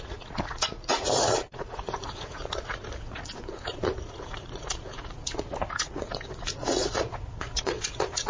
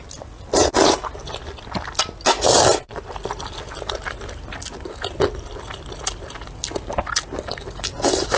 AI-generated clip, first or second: first